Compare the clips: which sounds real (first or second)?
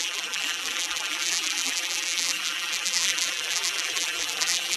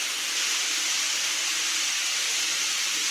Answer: second